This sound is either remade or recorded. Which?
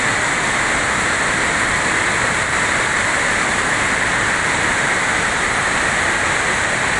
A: recorded